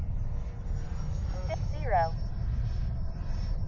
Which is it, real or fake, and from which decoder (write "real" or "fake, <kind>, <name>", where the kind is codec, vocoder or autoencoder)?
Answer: real